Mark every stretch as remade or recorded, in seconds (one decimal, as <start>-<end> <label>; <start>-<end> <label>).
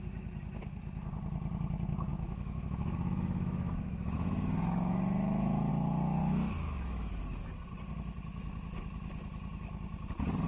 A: 0.0-2.1 recorded; 2.1-5.7 remade; 5.7-6.2 recorded; 6.2-7.1 remade; 7.1-10.5 recorded